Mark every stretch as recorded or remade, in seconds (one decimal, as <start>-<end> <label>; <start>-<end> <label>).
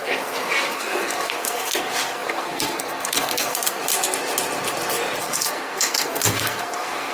0.0-3.8 remade; 3.8-5.2 recorded; 5.2-7.1 remade